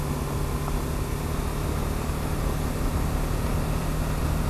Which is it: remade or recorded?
recorded